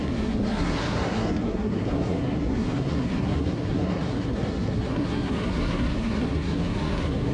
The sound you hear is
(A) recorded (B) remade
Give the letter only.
B